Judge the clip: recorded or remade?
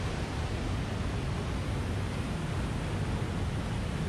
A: recorded